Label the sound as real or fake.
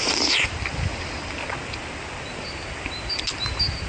real